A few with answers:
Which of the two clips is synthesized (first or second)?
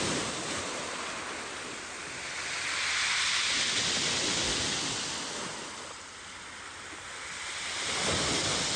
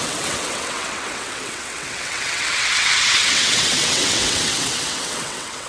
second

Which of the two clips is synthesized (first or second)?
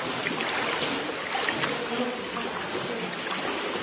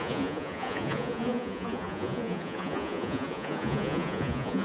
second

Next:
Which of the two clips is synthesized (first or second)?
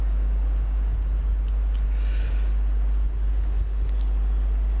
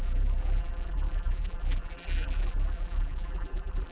second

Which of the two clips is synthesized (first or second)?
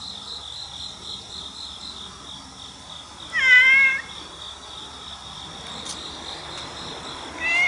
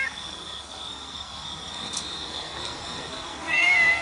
second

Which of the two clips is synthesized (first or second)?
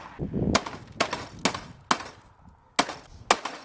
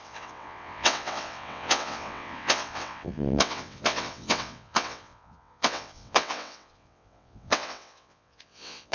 second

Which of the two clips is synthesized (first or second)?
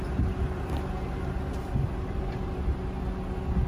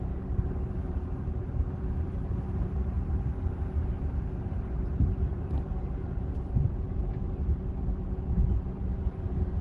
second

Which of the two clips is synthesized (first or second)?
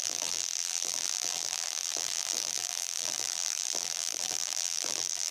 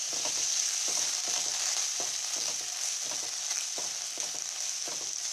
first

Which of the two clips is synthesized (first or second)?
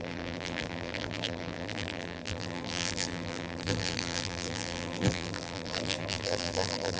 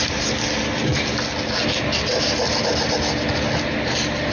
first